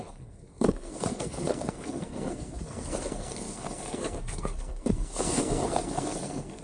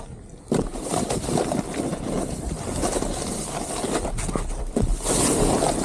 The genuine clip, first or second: second